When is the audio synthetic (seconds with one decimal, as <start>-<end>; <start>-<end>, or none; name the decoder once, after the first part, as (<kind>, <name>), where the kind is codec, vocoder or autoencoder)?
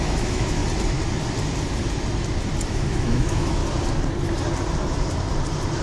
0.0-0.6 (autoencoder, DAC-VAE); 2.7-3.6